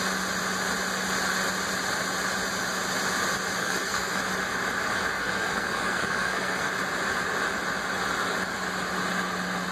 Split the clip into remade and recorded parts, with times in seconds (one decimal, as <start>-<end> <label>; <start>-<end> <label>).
0.0-3.6 recorded; 3.6-4.2 remade; 4.2-5.1 recorded; 5.1-6.7 remade; 6.7-9.7 recorded